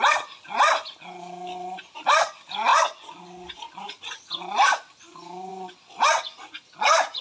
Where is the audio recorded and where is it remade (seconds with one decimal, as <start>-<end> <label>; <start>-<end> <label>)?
0.0-7.2 recorded